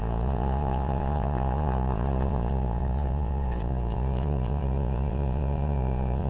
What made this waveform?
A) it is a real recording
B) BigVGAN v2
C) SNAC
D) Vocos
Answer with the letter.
D